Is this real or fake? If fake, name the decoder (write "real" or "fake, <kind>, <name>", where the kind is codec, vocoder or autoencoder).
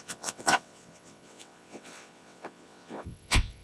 fake, vocoder, WaveNeXt